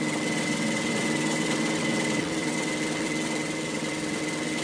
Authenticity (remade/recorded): remade